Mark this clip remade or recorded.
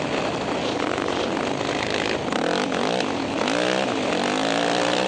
recorded